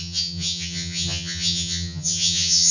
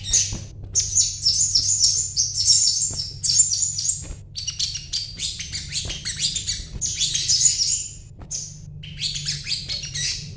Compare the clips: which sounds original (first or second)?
second